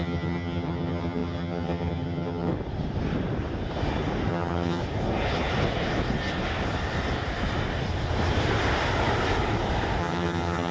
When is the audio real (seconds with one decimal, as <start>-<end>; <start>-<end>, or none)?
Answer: 2.5-4.3; 4.8-10.0

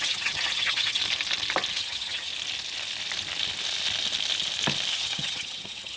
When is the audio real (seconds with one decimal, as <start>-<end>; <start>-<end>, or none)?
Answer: 1.0-1.7; 2.3-4.9